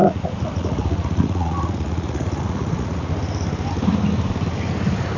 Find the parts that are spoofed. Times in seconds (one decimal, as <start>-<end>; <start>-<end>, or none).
0.0-3.1